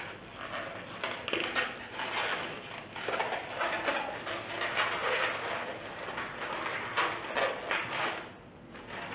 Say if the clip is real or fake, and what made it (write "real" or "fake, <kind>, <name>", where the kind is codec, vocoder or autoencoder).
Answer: real